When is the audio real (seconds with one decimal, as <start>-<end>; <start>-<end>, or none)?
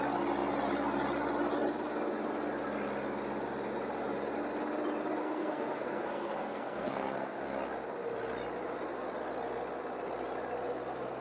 0.0-5.2; 7.4-11.2